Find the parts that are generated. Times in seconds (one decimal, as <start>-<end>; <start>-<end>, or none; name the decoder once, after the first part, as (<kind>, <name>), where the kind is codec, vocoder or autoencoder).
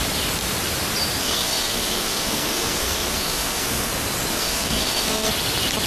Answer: 1.2-3.9 (codec, SNAC); 4.3-5.3